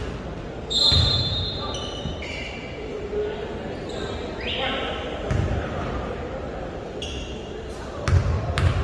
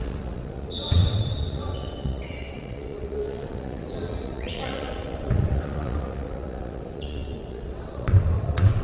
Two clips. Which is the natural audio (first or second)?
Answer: first